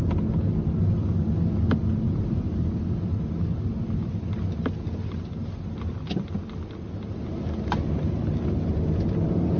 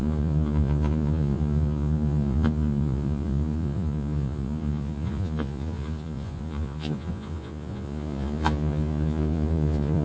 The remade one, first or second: second